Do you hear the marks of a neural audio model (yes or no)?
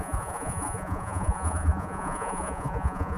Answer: yes